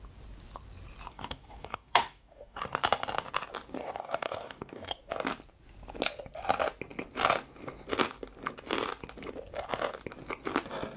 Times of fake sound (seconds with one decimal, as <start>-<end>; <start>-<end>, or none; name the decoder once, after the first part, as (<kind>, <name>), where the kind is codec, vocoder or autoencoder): 1.1-2.6 (codec, DAC); 3.8-5.1